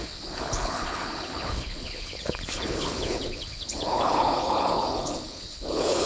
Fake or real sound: fake